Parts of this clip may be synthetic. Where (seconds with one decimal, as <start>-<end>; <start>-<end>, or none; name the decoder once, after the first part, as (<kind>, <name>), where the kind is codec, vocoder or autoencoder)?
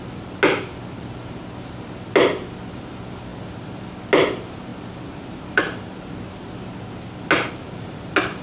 none